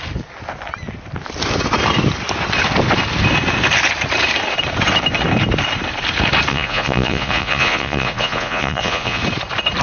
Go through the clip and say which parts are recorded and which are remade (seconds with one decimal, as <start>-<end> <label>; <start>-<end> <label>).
0.0-6.5 recorded; 6.5-9.2 remade; 9.2-9.8 recorded